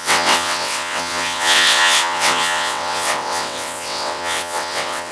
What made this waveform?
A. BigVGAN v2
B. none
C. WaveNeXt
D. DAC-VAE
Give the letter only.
C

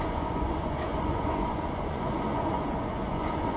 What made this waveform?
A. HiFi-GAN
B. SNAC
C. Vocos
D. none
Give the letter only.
C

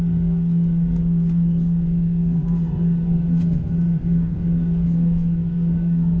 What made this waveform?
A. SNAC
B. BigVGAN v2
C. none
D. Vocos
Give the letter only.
A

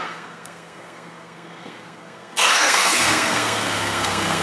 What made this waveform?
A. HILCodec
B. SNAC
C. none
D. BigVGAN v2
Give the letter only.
B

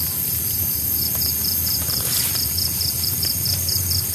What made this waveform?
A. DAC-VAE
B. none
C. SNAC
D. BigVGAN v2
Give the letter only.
D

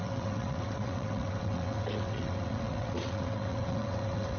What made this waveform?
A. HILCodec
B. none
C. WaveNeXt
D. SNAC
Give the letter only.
C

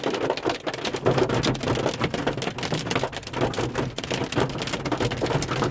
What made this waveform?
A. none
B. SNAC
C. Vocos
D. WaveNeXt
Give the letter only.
A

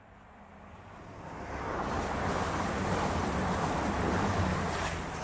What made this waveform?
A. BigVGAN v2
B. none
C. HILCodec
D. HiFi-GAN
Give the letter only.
B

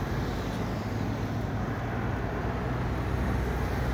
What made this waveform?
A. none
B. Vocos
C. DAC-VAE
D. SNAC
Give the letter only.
A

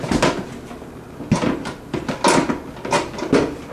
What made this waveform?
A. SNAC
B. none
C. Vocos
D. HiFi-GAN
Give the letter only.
B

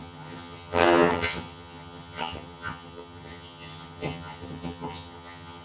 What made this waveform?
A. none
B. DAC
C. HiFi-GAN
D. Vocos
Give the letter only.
C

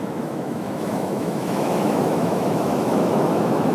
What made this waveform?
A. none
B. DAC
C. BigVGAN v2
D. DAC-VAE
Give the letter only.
D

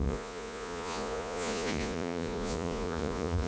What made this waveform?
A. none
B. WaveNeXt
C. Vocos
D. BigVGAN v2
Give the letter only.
C